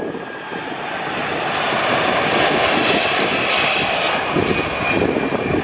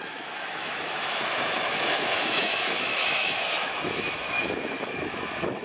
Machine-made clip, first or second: second